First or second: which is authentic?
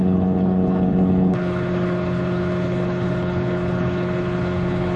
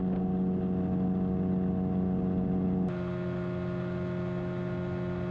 second